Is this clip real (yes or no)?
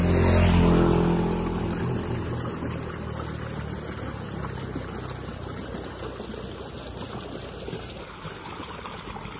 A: yes